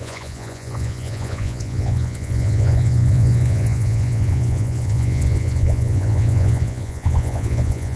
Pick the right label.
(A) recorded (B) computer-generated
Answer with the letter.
B